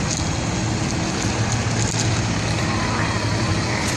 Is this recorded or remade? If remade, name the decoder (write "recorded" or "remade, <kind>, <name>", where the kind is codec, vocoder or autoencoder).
recorded